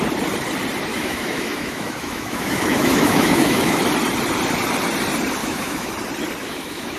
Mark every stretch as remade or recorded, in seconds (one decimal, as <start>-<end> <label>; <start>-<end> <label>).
0.0-0.9 recorded; 0.9-3.8 remade; 3.8-5.4 recorded; 5.4-5.9 remade; 5.9-6.4 recorded; 6.4-7.0 remade